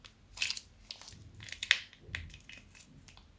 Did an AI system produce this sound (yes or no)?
no